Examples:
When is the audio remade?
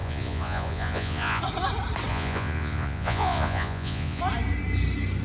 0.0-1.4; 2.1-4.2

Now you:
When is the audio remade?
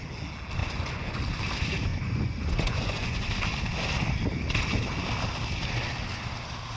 0.6-1.2; 1.9-3.3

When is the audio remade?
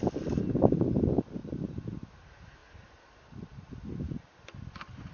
none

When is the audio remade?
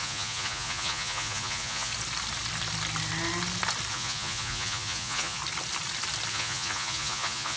0.0-1.9; 3.9-5.4; 6.3-7.6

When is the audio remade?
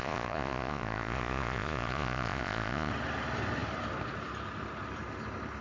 0.0-2.9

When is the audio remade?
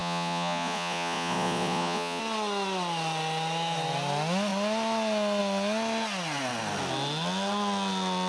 0.0-2.2